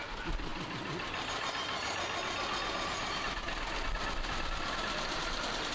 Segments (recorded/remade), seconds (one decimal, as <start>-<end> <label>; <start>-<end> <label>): 0.0-5.7 recorded